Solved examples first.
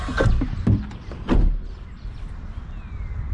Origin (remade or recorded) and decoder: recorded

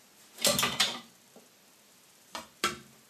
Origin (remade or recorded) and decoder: remade, vocoder, BigVGAN v2